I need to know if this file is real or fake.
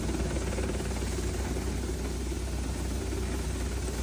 real